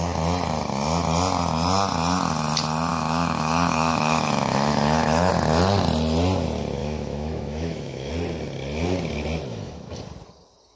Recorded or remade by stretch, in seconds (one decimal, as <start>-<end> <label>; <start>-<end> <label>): 0.0-2.9 recorded; 2.9-5.3 remade; 5.3-6.8 recorded; 6.8-8.1 remade; 8.1-9.5 recorded; 9.5-10.0 remade; 10.0-10.8 recorded